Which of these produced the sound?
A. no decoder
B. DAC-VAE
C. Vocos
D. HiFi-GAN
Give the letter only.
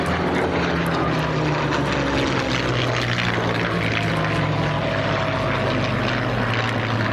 A